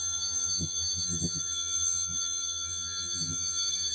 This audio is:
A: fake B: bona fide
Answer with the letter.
A